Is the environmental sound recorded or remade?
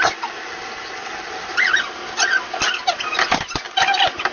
recorded